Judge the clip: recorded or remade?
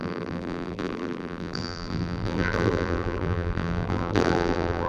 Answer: remade